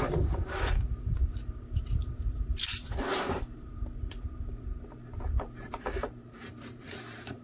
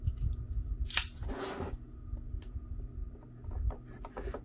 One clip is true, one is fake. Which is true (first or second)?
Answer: second